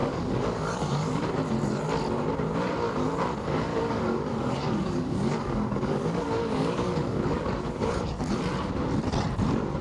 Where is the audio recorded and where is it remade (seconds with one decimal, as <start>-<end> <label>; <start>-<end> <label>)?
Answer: 0.0-1.3 remade; 1.3-3.7 recorded; 3.7-8.3 remade; 8.3-9.8 recorded